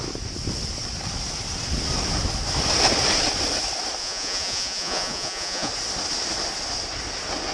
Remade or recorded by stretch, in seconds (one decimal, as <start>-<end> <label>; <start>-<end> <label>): 0.0-4.0 recorded; 4.0-5.7 remade; 5.7-7.5 recorded

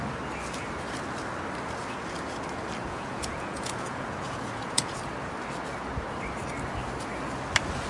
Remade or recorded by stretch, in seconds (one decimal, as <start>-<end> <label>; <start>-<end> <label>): 0.0-2.8 recorded; 2.8-5.0 remade; 5.0-7.9 recorded